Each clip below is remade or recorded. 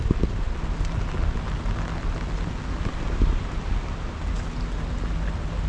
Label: recorded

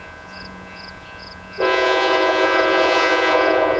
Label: remade